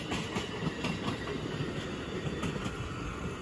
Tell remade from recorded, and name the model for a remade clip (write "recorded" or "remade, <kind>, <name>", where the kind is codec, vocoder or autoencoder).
recorded